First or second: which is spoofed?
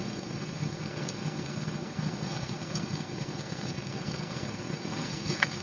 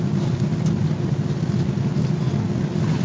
first